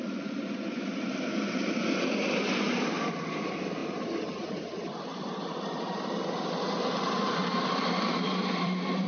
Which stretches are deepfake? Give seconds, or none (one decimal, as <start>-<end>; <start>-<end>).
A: 0.0-9.1

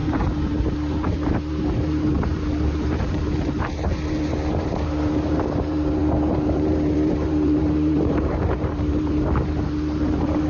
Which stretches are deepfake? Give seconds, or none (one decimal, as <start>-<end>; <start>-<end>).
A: 0.0-10.5